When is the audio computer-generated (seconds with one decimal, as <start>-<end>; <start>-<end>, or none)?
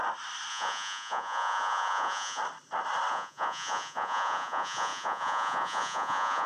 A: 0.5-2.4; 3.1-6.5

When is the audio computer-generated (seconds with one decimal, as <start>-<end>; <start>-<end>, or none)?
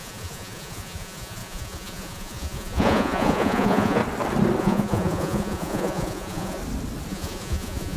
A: 0.0-4.0; 4.6-6.6; 7.1-8.0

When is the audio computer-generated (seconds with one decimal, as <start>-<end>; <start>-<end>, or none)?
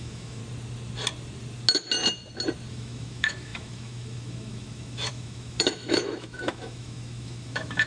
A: 0.0-0.4; 2.7-7.9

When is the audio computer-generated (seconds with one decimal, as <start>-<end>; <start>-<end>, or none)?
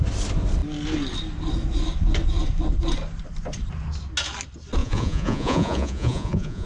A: 4.8-6.7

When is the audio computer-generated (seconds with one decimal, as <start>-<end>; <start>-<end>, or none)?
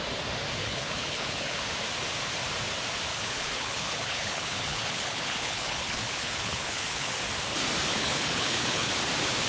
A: 0.6-1.6; 3.1-7.2; 7.9-8.9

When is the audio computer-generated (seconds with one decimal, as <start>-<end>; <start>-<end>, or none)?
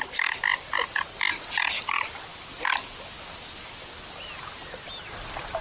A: none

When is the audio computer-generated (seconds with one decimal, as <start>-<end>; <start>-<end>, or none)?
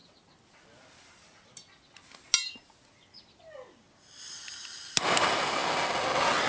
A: none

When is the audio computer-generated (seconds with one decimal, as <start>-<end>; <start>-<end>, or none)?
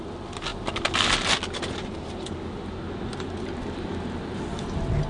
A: none